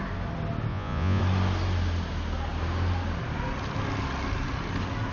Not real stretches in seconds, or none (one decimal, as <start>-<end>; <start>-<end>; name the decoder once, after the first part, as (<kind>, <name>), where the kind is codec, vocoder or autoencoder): 0.7-1.2 (vocoder, Vocos)